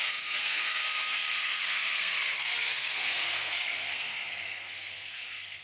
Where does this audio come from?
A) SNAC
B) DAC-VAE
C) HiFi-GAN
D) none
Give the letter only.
A